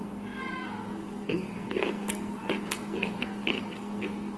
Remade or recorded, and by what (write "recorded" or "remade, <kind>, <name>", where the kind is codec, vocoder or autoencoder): remade, codec, SNAC